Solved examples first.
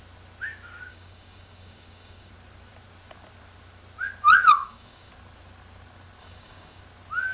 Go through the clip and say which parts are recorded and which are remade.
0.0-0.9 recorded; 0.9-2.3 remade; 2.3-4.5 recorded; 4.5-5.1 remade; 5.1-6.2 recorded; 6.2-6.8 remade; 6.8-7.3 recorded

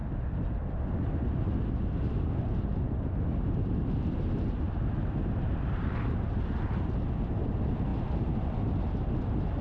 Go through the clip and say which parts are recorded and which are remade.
0.0-9.6 recorded